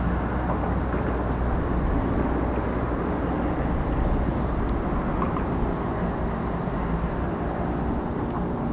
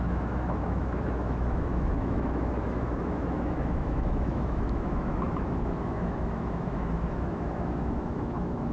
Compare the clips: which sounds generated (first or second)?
second